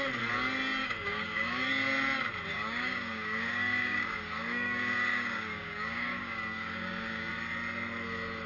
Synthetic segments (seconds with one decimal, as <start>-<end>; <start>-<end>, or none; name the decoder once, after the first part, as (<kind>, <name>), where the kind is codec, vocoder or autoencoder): 0.8-1.7 (codec, DAC); 2.5-7.3